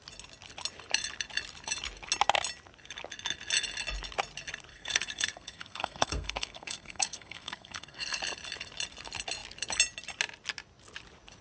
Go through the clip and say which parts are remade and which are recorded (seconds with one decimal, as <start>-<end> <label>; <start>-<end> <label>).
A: 0.0-4.7 recorded; 4.7-8.2 remade; 8.2-11.4 recorded